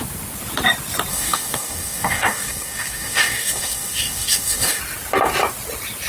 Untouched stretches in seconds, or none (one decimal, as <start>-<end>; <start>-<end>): 0.0-1.1; 4.8-6.1